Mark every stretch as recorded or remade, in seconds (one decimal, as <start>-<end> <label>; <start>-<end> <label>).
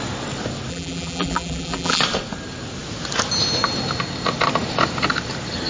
0.0-0.7 recorded; 0.7-2.0 remade; 2.0-5.7 recorded